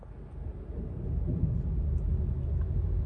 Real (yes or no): yes